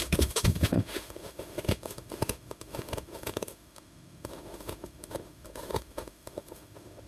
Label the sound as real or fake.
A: fake